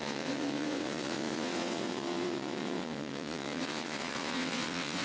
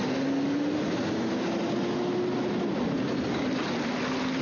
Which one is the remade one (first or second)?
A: first